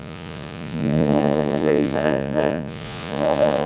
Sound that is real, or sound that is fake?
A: fake